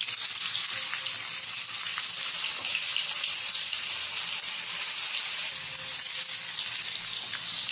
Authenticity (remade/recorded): recorded